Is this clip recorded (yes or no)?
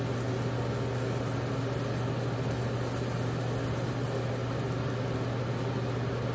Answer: yes